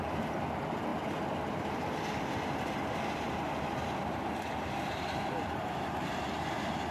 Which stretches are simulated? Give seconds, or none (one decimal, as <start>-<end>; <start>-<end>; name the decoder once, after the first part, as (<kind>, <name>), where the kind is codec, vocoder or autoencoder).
5.6-6.3 (vocoder, BigVGAN v2)